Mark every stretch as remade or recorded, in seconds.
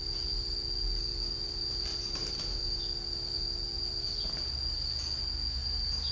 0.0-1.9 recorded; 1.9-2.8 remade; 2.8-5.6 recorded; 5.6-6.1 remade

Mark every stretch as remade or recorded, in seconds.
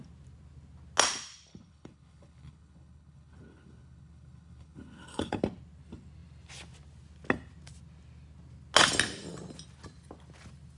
0.0-1.5 recorded; 1.5-5.4 remade; 5.4-10.8 recorded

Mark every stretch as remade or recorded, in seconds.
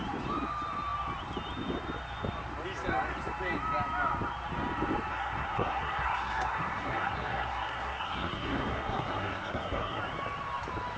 0.0-5.1 recorded; 5.1-10.0 remade; 10.0-11.0 recorded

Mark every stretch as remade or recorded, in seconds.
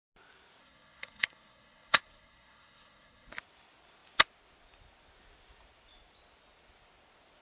0.0-0.6 recorded; 0.6-3.3 remade; 3.3-7.4 recorded